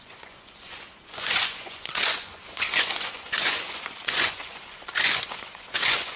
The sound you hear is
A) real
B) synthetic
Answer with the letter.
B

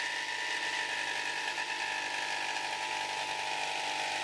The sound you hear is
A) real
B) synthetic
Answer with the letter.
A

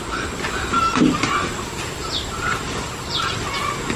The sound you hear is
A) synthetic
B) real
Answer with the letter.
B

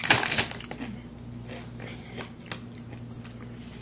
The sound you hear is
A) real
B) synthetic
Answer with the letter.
A